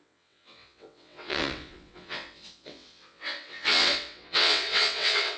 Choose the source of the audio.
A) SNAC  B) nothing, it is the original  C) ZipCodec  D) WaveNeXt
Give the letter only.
D